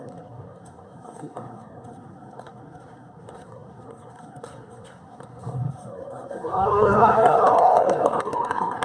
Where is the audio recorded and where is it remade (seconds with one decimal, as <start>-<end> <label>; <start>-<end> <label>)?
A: 0.0-8.8 remade